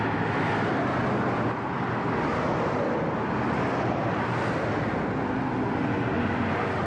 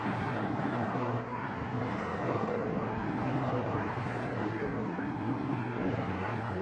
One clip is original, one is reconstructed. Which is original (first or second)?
first